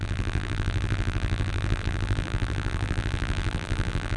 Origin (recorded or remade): remade